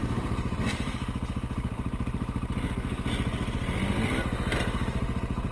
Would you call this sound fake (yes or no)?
yes